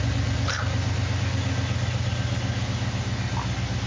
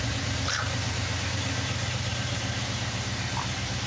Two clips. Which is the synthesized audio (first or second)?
second